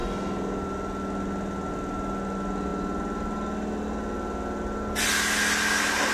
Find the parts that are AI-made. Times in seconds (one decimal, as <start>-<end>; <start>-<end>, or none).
none

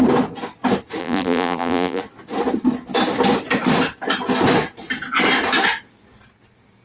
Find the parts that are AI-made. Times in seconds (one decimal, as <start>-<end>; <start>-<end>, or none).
1.0-2.0

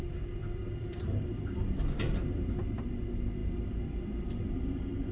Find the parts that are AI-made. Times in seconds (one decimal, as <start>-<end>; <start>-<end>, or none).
0.4-1.8